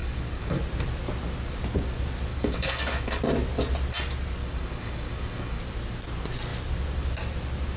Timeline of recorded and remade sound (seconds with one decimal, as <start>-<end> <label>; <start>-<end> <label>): 0.0-0.6 remade; 0.6-2.3 recorded; 2.3-3.2 remade; 3.2-4.4 recorded; 4.4-5.6 remade; 5.6-7.8 recorded

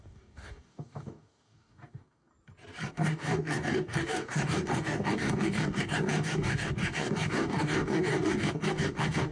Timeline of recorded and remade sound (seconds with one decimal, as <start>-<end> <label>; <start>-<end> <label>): 0.0-2.3 remade; 2.3-2.9 recorded; 2.9-9.3 remade

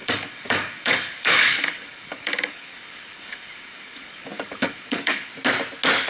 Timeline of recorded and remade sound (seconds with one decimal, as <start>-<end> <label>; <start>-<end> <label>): 0.0-5.3 remade; 5.3-6.1 recorded